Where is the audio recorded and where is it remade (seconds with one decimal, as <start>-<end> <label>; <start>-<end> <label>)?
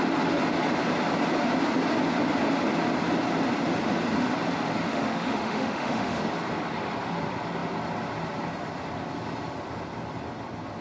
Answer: 0.0-4.9 recorded; 4.9-6.2 remade; 6.2-10.8 recorded